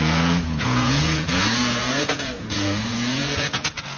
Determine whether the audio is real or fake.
fake